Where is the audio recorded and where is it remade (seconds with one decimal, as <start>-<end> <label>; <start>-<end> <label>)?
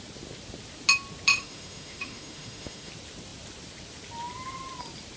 0.0-1.3 recorded; 1.3-2.9 remade; 2.9-5.2 recorded